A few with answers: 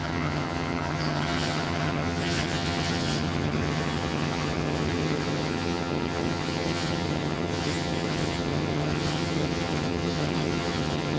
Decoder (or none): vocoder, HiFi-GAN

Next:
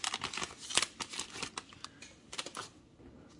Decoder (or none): none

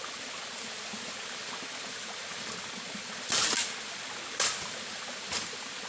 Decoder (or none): none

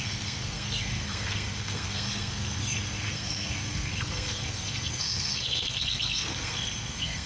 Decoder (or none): codec, SNAC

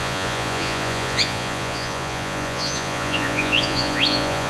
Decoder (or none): vocoder, Vocos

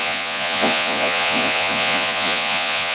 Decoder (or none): vocoder, Vocos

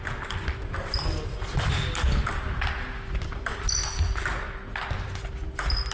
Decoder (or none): none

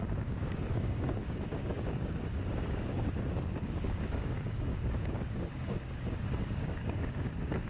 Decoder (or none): codec, DAC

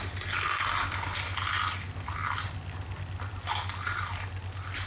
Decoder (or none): none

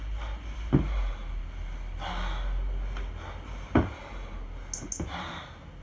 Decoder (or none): none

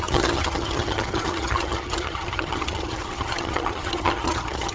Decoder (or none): vocoder, HiFi-GAN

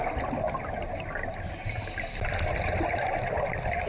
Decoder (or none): none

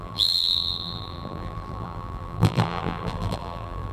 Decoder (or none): vocoder, BigVGAN v2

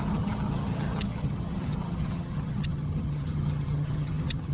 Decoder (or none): vocoder, HiFi-GAN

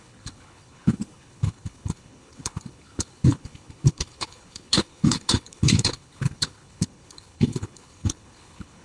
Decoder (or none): codec, HILCodec